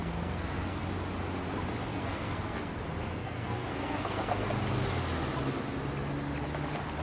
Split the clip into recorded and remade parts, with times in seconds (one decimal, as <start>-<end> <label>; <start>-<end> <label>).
0.0-0.8 remade; 0.8-1.9 recorded; 1.9-2.8 remade; 2.8-3.2 recorded; 3.2-4.5 remade; 4.5-7.0 recorded